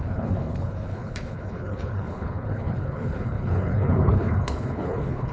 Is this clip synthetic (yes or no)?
yes